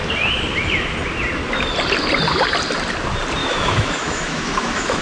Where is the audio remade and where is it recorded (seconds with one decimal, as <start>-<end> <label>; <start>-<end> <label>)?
0.0-3.4 recorded; 3.4-5.0 remade